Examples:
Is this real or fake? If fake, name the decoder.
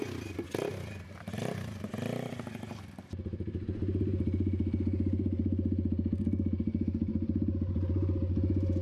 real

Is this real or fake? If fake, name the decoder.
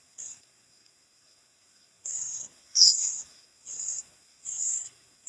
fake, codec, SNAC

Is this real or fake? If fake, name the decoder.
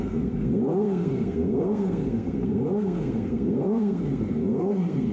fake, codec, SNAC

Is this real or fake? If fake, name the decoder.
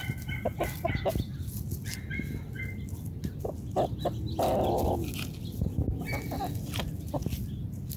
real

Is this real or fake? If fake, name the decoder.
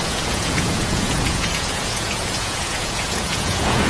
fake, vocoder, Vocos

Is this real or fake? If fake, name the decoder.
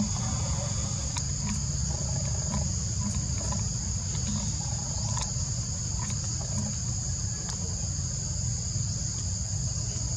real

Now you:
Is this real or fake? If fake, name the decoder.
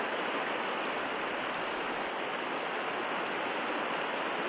fake, vocoder, BigVGAN v2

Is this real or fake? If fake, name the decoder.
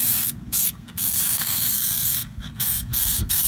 fake, codec, SNAC